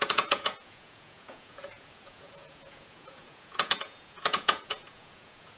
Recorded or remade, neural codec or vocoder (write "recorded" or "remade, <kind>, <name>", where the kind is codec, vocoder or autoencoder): remade, vocoder, Vocos